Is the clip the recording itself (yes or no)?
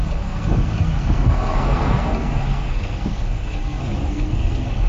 no